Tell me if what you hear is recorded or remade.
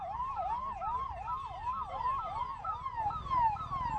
recorded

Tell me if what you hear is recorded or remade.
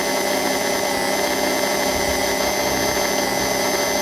recorded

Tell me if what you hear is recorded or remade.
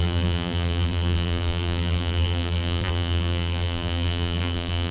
remade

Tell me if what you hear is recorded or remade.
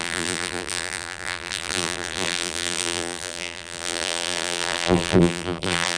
remade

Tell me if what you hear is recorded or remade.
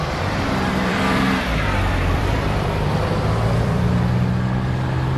remade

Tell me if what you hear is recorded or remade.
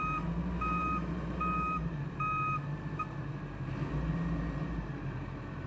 remade